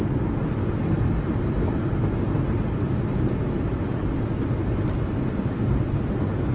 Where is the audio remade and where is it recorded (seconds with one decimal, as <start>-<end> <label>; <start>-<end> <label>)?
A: 0.0-6.5 recorded